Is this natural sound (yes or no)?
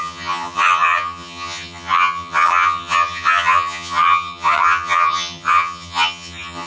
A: no